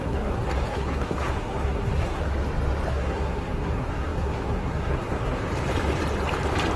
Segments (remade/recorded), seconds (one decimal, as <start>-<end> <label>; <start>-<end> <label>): 0.0-2.2 remade; 2.2-2.9 recorded; 2.9-5.5 remade; 5.5-6.8 recorded

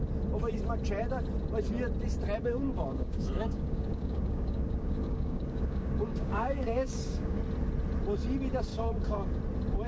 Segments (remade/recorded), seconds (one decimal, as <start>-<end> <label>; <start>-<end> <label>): 0.0-2.4 recorded; 2.4-7.4 remade; 7.4-8.7 recorded; 8.7-9.4 remade; 9.4-9.9 recorded

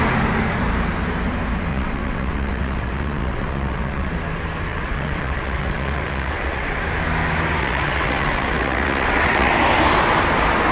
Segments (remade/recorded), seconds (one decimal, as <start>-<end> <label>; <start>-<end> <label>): 0.0-1.7 recorded; 1.7-4.1 remade; 4.1-4.7 recorded; 4.7-6.8 remade; 6.8-7.6 recorded; 7.6-9.5 remade; 9.5-10.7 recorded

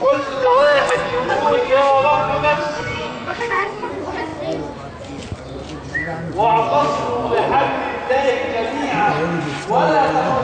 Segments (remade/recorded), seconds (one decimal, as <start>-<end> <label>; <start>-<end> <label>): 0.0-3.9 remade; 3.9-10.4 recorded

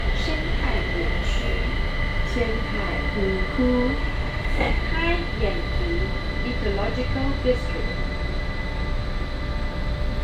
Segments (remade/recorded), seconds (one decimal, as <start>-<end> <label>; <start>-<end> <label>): 0.0-4.0 recorded; 4.0-4.8 remade; 4.8-10.2 recorded

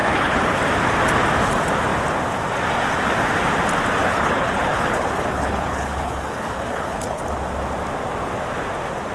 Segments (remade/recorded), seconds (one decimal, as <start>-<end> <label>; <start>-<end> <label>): 0.0-0.6 remade; 0.6-4.0 recorded; 4.0-7.2 remade; 7.2-9.1 recorded

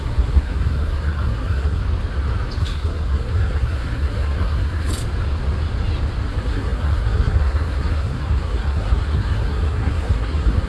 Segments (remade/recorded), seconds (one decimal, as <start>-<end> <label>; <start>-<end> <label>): 0.0-1.8 remade; 1.8-2.6 recorded; 2.6-4.9 remade; 4.9-6.3 recorded; 6.3-10.7 remade